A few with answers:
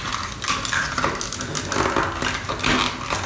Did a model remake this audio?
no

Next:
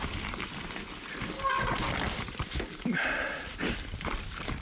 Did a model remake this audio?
no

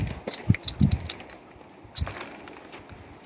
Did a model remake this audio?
no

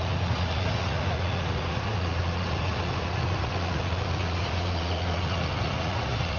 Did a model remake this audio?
yes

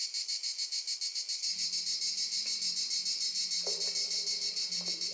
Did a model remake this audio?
no